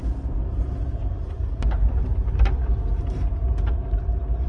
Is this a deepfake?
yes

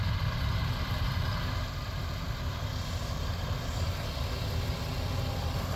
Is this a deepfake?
yes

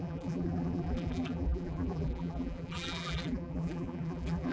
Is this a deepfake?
yes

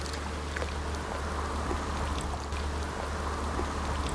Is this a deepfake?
no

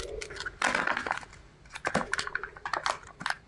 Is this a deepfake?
no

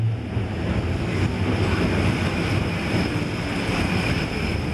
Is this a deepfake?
no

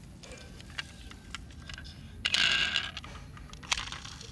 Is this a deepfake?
no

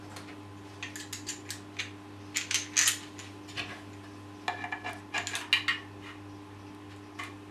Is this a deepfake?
no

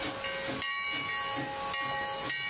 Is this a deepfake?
no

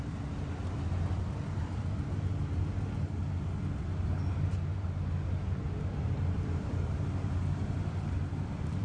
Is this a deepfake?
yes